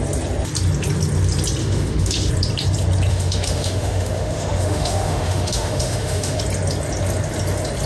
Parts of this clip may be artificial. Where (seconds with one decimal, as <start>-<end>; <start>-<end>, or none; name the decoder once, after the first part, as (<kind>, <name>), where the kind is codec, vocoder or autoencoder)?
1.6-2.3 (autoencoder, DAC-VAE); 3.1-6.4